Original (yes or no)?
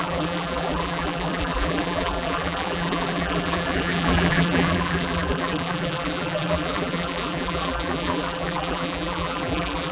no